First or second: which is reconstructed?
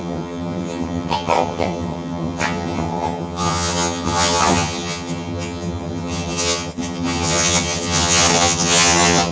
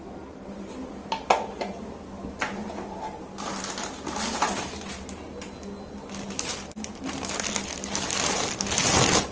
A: first